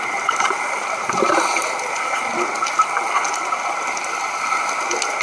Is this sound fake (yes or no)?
no